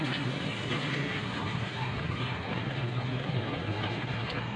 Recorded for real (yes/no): no